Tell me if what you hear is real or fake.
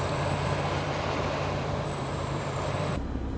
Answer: fake